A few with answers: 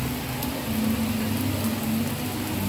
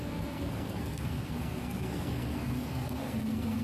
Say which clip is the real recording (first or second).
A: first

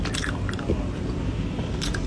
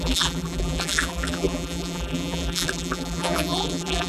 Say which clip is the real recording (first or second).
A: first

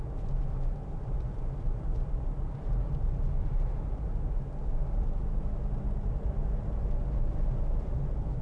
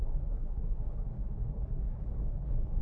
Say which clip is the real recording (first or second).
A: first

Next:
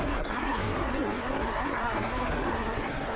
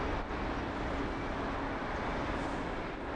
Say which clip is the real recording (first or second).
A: second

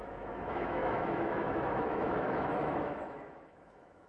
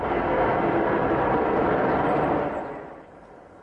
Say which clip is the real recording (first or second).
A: second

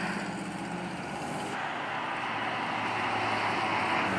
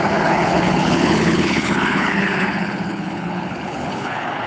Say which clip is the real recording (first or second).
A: first